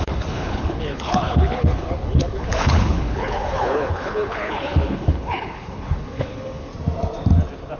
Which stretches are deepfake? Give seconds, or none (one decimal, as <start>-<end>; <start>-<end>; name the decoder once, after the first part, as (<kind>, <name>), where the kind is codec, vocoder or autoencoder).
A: 0.0-6.7 (codec, HILCodec)